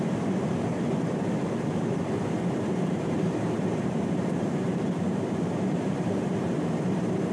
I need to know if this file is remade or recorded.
remade